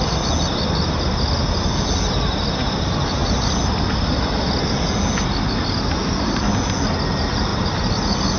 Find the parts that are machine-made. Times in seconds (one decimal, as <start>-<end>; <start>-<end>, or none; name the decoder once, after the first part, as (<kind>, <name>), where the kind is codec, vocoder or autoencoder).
none

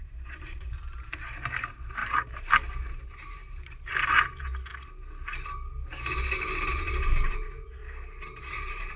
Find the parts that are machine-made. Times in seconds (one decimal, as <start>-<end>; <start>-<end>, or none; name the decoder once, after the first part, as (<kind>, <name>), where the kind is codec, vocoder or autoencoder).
0.0-4.7 (vocoder, BigVGAN v2); 6.7-7.8; 8.5-9.0

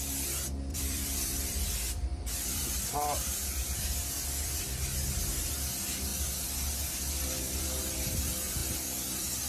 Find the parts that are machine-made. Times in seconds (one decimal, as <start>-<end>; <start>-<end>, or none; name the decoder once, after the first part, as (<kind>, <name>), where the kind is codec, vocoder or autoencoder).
0.7-4.6 (vocoder, BigVGAN v2); 8.6-9.5

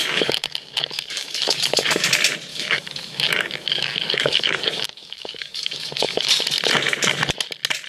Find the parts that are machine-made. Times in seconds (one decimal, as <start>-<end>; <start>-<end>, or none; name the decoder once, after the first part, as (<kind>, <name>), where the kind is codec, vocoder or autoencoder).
0.0-2.1 (codec, DAC); 2.5-6.3